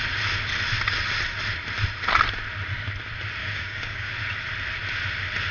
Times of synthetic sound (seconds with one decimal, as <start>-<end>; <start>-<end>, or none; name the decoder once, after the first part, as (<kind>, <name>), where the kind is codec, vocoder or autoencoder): 3.4-4.1 (codec, DAC)

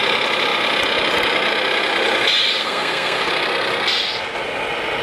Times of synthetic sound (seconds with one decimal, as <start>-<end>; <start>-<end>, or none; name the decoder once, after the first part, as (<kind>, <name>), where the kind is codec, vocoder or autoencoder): 2.6-3.3 (codec, SNAC)

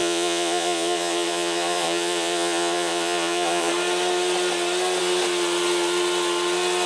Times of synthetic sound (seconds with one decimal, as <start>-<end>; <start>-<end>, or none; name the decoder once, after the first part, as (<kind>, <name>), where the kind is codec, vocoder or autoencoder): 0.0-3.7 (vocoder, Vocos)

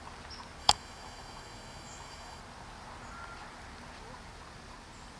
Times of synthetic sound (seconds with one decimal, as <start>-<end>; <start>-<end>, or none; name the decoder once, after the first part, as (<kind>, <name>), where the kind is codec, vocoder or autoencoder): 0.6-2.4 (autoencoder, DAC-VAE)

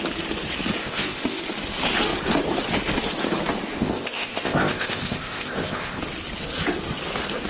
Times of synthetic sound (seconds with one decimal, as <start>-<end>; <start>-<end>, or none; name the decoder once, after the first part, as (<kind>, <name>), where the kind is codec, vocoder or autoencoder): 0.8-1.4 (codec, ZipCodec); 3.8-6.0

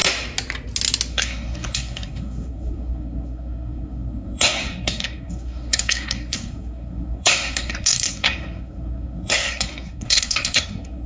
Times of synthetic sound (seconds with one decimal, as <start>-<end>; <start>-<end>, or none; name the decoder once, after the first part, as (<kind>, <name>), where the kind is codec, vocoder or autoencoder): 1.1-11.1 (codec, SNAC)

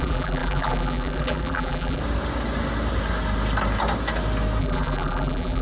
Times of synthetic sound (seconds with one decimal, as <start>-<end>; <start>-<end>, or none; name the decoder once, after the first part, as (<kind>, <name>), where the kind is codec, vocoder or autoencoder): 0.0-2.0 (vocoder, BigVGAN v2); 4.6-5.6

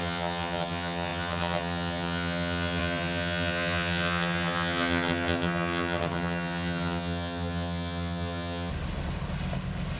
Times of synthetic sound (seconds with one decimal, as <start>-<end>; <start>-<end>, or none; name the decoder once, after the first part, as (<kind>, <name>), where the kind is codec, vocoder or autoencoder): 0.0-8.7 (vocoder, HiFi-GAN)